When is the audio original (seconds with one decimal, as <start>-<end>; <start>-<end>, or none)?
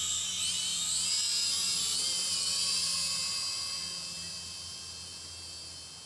0.0-6.1